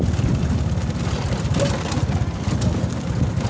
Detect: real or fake real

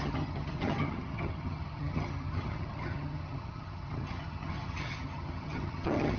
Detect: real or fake fake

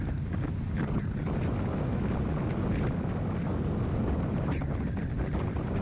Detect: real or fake real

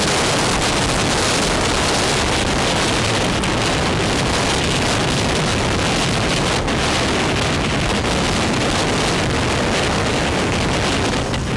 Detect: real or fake real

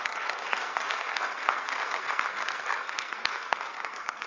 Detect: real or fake fake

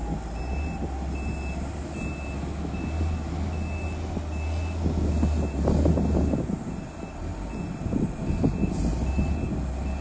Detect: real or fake real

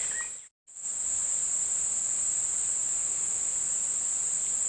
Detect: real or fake real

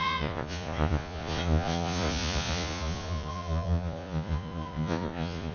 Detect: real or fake fake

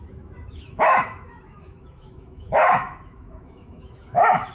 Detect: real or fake fake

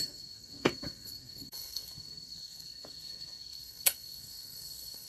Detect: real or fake fake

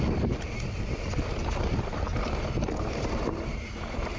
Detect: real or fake real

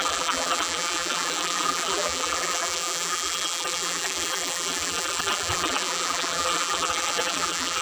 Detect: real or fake fake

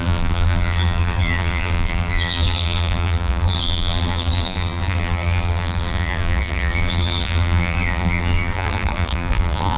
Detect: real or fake fake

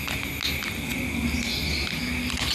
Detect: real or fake real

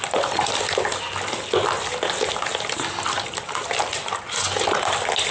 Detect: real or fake real